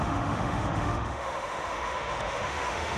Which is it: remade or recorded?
remade